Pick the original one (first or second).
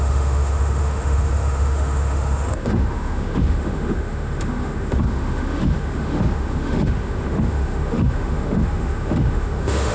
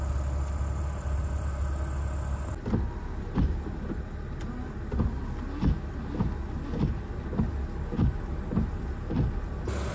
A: second